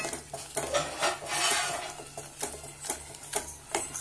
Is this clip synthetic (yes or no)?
no